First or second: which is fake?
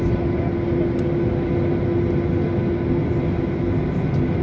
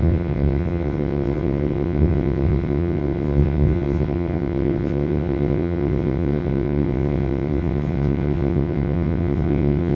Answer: second